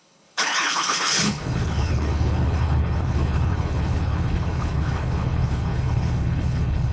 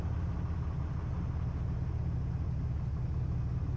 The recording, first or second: second